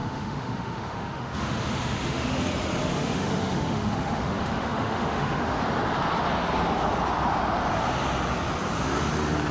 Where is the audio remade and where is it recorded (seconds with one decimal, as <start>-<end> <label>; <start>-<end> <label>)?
0.0-2.4 remade; 2.4-2.8 recorded; 2.8-5.6 remade; 5.6-9.5 recorded